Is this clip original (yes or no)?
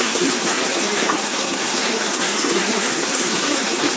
no